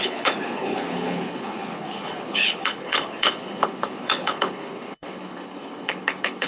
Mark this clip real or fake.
fake